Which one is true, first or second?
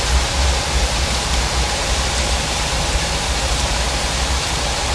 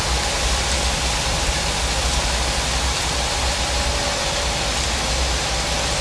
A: second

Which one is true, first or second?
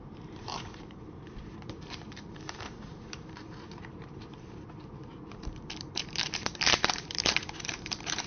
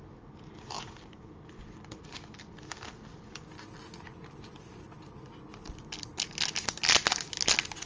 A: second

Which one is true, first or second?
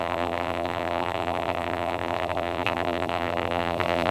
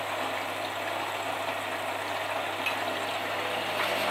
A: second